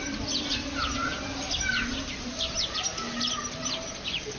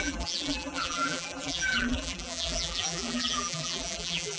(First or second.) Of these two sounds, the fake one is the second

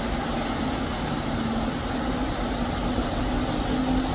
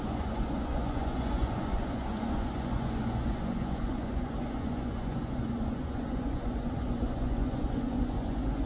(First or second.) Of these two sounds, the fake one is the second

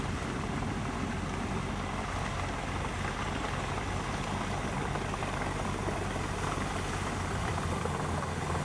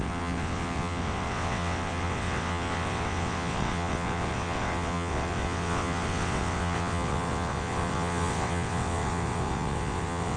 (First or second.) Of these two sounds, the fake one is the second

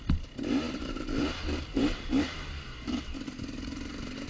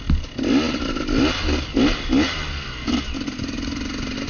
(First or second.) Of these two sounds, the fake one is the first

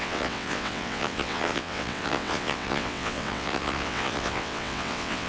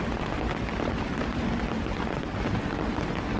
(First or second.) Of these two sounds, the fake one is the first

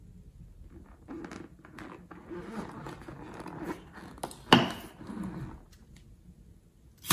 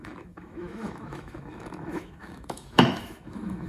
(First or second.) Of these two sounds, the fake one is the second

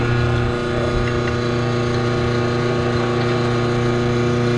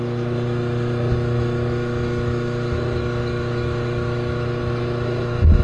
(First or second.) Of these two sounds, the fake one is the second